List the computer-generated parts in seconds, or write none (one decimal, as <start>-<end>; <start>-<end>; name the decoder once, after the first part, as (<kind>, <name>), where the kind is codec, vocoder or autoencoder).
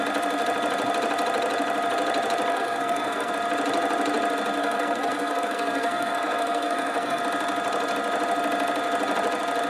2.5-3.3 (codec, SNAC); 4.6-7.2